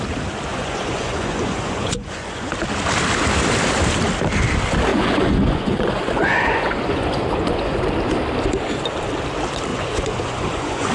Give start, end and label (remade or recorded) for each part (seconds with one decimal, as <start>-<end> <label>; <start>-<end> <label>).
0.0-0.5 recorded; 0.5-2.5 remade; 2.5-4.9 recorded; 4.9-7.8 remade; 7.8-9.7 recorded; 9.7-10.9 remade